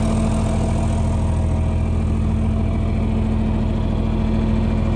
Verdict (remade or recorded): recorded